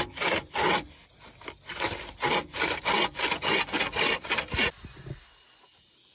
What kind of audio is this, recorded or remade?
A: recorded